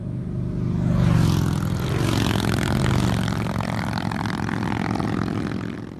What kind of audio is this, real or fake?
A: real